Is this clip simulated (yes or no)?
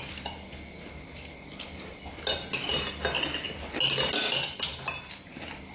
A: no